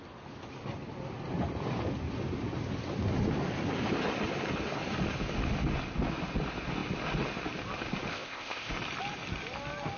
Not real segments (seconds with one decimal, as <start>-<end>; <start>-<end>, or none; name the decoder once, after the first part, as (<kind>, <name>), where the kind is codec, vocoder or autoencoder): 8.1-8.7 (codec, ZipCodec)